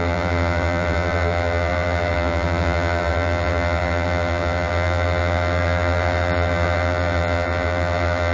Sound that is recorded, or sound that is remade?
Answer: remade